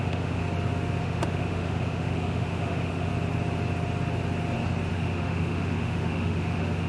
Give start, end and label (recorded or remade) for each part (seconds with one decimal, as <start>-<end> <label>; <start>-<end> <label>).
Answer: 0.0-0.4 remade; 0.4-1.0 recorded; 1.0-3.1 remade; 3.1-4.9 recorded; 4.9-6.9 remade